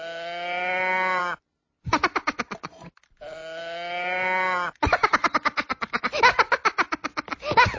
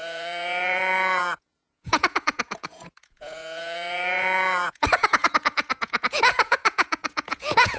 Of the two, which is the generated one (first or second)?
second